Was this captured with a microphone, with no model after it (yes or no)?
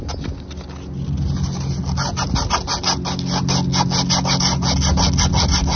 yes